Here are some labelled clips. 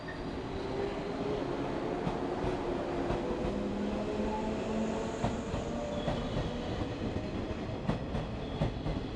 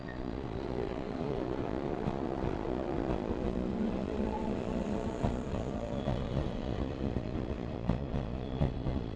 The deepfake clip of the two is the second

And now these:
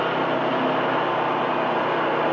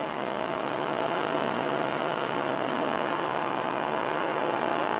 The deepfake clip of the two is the second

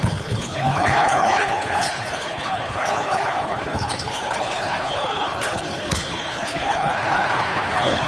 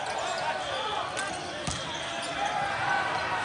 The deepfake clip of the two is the first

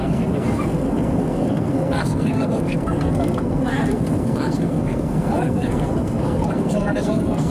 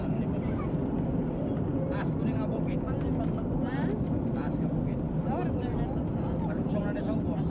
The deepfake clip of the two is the first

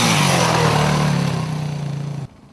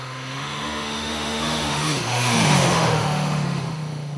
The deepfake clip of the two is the second